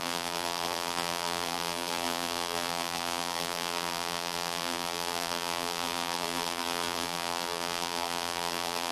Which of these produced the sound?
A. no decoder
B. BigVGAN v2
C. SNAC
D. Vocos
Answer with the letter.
B